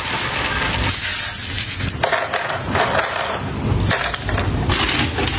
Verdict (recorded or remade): recorded